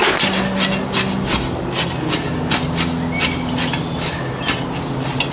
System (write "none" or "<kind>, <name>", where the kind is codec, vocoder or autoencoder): none